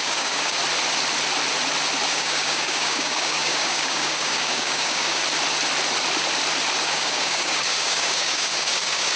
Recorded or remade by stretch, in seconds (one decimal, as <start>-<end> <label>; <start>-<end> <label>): 0.0-0.6 remade; 0.6-2.1 recorded; 2.1-5.2 remade; 5.2-6.8 recorded; 6.8-9.2 remade